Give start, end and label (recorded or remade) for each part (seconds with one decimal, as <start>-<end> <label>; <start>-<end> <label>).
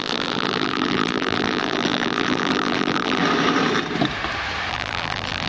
0.0-3.2 remade; 3.2-4.7 recorded; 4.7-5.5 remade